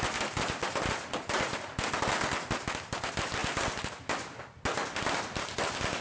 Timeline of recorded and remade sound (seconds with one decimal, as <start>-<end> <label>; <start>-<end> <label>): 0.0-6.0 recorded